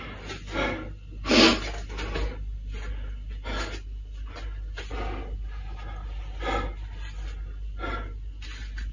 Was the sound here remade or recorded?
recorded